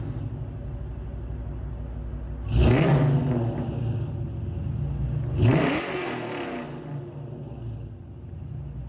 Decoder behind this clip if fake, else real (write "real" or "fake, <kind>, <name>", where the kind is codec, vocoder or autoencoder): real